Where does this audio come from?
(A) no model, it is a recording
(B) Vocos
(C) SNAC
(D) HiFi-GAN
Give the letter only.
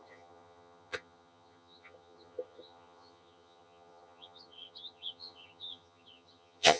D